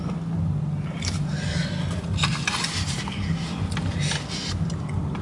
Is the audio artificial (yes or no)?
no